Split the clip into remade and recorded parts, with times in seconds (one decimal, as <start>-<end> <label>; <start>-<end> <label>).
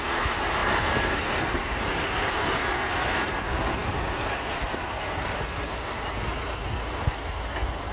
0.0-7.9 recorded